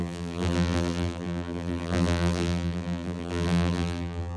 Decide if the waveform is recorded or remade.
remade